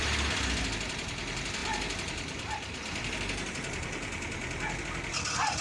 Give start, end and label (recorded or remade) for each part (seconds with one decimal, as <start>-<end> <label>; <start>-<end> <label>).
0.0-5.6 recorded